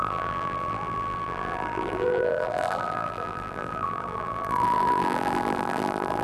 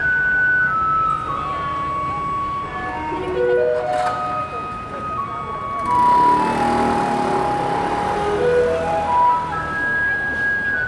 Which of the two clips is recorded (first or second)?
second